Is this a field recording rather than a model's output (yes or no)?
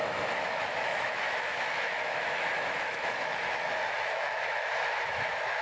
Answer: no